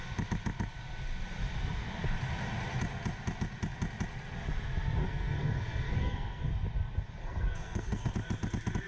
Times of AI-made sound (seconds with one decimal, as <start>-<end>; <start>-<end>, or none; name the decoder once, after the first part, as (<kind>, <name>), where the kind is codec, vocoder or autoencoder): 5.0-6.5 (codec, SNAC); 7.2-8.1